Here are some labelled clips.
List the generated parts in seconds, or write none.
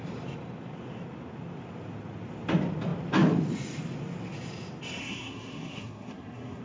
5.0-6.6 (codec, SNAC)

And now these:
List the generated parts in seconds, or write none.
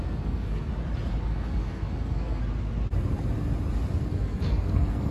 0.0-0.7 (codec, SNAC); 1.2-2.4; 4.0-5.1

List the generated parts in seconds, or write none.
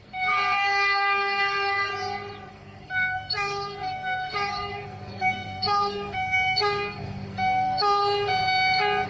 0.0-1.9 (codec, SNAC); 2.5-8.0